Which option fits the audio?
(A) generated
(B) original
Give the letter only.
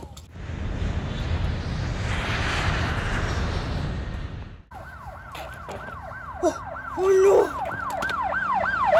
B